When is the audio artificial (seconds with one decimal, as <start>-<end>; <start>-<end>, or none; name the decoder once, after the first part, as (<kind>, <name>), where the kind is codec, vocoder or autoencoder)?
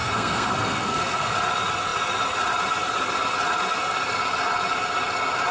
0.0-1.3 (codec, SNAC)